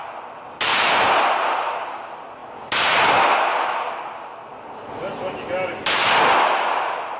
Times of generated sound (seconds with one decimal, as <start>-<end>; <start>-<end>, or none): 0.7-1.3

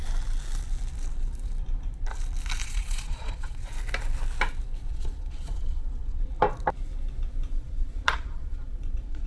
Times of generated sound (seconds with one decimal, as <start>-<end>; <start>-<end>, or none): 2.6-3.6; 4.9-6.3; 7.5-9.3